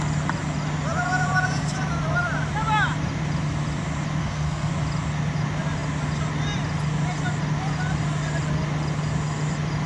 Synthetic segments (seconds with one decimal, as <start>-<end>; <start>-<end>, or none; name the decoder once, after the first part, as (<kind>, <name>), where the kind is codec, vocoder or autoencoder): 4.2-4.7 (codec, SNAC)